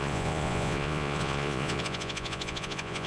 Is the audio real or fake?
fake